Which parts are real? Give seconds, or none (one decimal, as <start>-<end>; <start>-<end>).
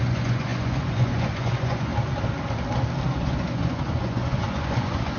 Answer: 1.9-3.1